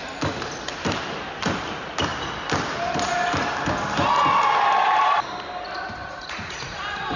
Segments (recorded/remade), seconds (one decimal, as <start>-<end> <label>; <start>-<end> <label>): 0.0-6.0 recorded; 6.0-6.8 remade; 6.8-7.2 recorded